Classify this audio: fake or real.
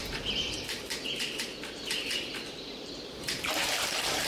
fake